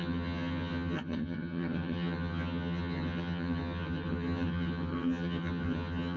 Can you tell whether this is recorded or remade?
remade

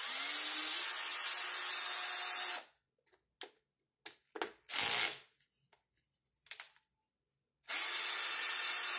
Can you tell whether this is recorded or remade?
recorded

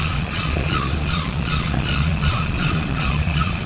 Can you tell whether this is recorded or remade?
remade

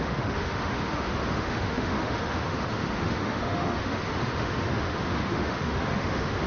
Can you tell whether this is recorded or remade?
remade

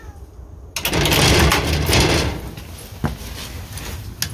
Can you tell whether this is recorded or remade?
recorded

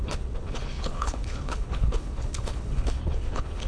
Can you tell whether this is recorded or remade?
remade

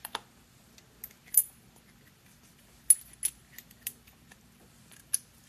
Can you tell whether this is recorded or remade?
recorded